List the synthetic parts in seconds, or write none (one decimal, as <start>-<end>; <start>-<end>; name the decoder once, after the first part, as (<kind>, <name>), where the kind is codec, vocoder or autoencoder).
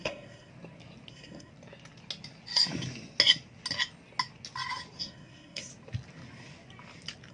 0.0-0.5 (codec, SNAC); 1.1-1.5; 5.0-5.7